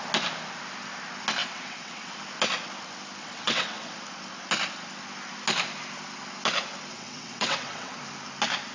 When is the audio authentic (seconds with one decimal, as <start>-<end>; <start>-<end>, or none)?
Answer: 0.0-1.4; 2.1-3.2; 3.9-6.9; 8.0-8.7